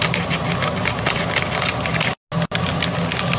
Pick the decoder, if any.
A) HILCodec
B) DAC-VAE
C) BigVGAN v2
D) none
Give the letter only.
D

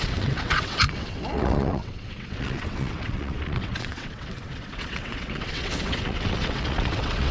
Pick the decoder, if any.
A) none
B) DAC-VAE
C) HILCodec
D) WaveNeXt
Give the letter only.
D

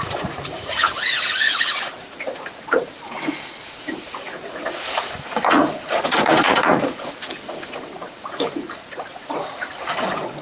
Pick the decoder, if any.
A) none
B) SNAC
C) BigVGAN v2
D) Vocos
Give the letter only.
D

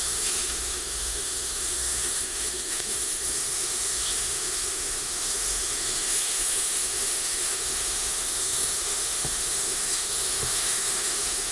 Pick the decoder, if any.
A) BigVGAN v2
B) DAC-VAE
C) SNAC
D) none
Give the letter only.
B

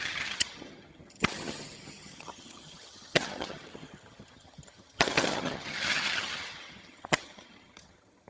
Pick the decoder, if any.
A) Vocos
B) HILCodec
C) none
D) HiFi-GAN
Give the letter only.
D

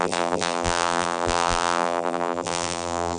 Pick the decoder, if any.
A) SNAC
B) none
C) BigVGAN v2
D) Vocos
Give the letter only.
C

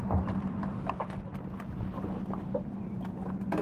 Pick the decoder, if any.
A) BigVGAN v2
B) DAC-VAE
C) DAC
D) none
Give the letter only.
D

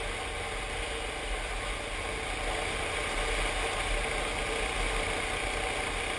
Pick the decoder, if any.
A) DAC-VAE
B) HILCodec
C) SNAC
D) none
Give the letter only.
D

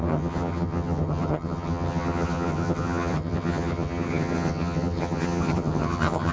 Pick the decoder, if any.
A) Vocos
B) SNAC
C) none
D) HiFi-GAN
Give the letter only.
D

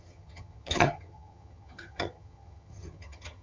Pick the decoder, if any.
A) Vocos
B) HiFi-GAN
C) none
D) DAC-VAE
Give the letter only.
B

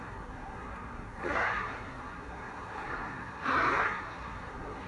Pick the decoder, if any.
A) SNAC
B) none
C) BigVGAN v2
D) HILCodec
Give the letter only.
A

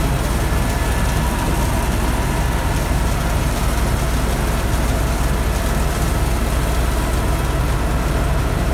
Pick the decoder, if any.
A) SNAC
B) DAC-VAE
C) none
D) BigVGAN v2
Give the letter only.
C